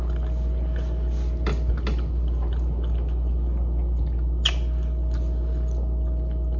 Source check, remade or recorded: recorded